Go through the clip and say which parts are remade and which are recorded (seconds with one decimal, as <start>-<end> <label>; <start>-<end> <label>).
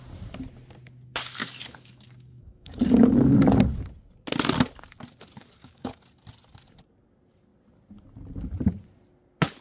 0.0-1.4 recorded; 1.4-3.0 remade; 3.0-5.4 recorded; 5.4-6.0 remade; 6.0-9.6 recorded